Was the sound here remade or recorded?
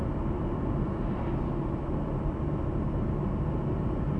recorded